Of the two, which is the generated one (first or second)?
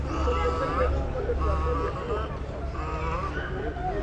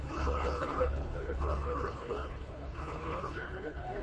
second